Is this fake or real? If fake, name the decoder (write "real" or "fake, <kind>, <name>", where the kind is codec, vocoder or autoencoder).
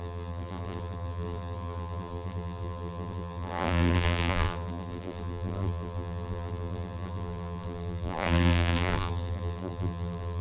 fake, vocoder, BigVGAN v2